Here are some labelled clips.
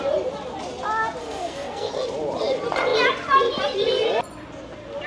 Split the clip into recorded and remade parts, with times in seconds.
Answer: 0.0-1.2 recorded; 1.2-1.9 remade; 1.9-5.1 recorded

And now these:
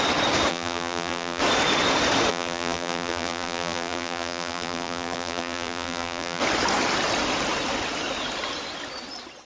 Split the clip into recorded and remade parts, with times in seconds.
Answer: 0.0-0.5 recorded; 0.5-1.4 remade; 1.4-2.3 recorded; 2.3-6.4 remade; 6.4-9.4 recorded

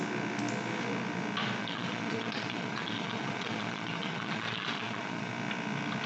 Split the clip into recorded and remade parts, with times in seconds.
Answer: 0.0-1.6 recorded; 1.6-5.3 remade; 5.3-6.1 recorded

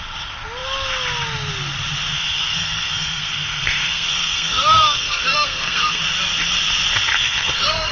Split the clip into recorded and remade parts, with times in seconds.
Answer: 0.0-2.1 recorded; 2.1-6.0 remade; 6.0-7.1 recorded; 7.1-7.9 remade

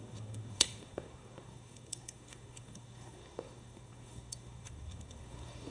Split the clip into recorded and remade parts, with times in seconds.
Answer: 0.0-5.7 remade

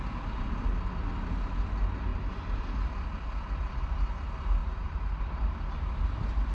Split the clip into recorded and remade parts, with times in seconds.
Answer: 0.0-2.1 recorded; 2.1-2.6 remade; 2.6-4.6 recorded; 4.6-5.2 remade; 5.2-6.5 recorded

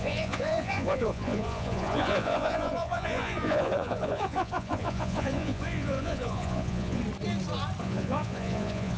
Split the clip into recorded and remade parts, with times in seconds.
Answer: 0.0-7.0 remade; 7.0-7.8 recorded; 7.8-9.0 remade

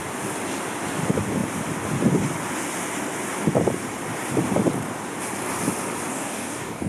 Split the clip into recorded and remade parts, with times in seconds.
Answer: 0.0-6.1 recorded; 6.1-6.9 remade